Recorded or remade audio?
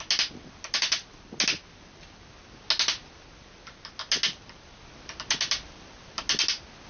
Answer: recorded